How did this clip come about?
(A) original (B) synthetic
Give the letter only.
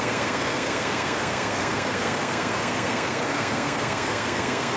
B